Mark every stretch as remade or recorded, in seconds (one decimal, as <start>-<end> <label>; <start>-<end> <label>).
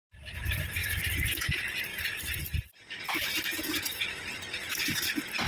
0.0-3.5 recorded; 3.5-4.2 remade; 4.2-5.5 recorded